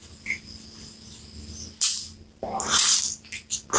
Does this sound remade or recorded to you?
recorded